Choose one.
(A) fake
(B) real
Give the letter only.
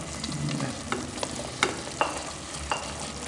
B